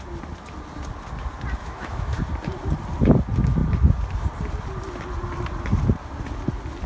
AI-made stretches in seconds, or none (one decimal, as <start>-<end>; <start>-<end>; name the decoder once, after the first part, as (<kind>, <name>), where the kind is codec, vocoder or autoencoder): 1.6-2.2 (autoencoder, DAC-VAE)